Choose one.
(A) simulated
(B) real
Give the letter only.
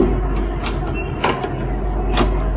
B